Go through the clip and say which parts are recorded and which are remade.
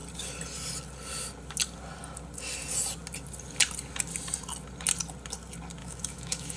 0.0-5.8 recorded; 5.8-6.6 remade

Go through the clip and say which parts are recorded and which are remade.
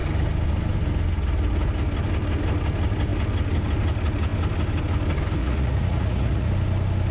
0.0-5.4 recorded; 5.4-6.5 remade; 6.5-7.1 recorded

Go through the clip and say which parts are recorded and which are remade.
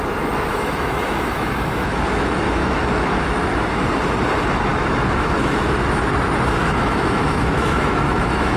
0.0-0.5 recorded; 0.5-3.5 remade; 3.5-4.7 recorded; 4.7-6.1 remade; 6.1-6.6 recorded; 6.6-8.6 remade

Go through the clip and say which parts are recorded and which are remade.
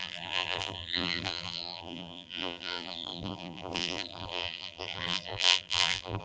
0.0-6.2 remade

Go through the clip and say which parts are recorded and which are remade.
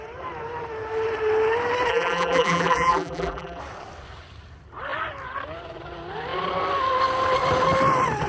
0.0-1.9 recorded; 1.9-3.6 remade; 3.6-8.3 recorded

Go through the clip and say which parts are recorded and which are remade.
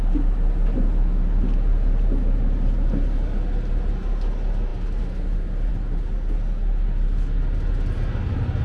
0.0-8.6 recorded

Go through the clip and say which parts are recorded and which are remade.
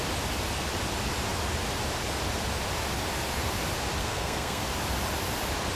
0.0-4.0 recorded; 4.0-4.6 remade; 4.6-5.8 recorded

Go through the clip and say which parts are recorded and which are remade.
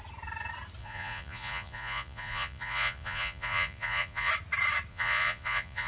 0.0-0.8 recorded; 0.8-4.3 remade; 4.3-4.9 recorded; 4.9-5.9 remade